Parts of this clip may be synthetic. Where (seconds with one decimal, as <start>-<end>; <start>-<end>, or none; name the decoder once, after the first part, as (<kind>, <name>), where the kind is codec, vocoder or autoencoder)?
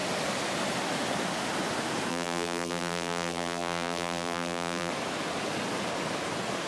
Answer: 2.1-4.9 (vocoder, BigVGAN v2)